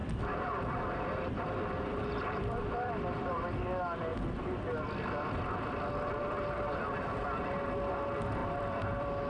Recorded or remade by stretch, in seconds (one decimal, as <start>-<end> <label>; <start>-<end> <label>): 0.0-3.5 remade; 3.5-8.4 recorded; 8.4-9.3 remade